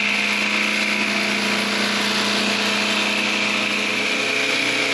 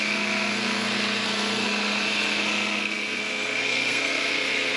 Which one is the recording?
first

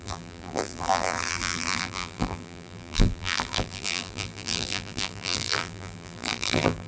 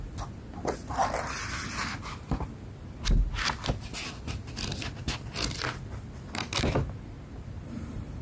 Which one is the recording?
second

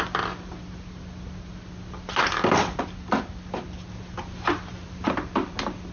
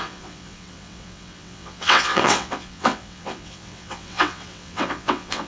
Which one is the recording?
first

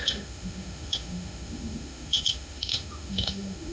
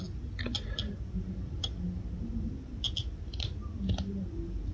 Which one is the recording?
second